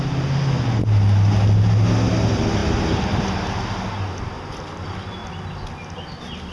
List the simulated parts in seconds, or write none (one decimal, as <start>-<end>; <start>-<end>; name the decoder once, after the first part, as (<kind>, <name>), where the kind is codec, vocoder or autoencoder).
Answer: none